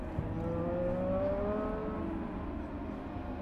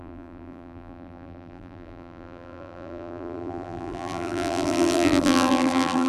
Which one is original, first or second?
first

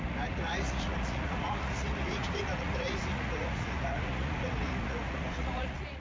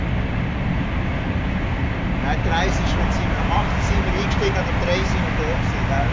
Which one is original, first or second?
second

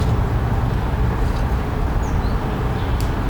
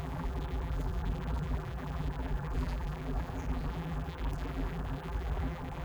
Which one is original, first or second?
first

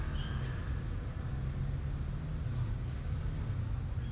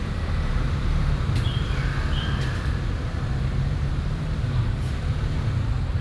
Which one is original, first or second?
first